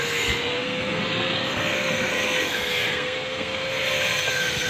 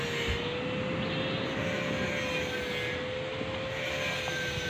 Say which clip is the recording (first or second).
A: second